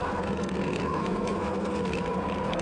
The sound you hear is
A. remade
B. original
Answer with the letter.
A